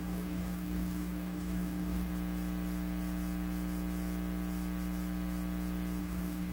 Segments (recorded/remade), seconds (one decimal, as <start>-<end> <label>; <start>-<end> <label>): 0.0-2.1 remade; 2.1-6.0 recorded; 6.0-6.5 remade